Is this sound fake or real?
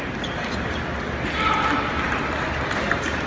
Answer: real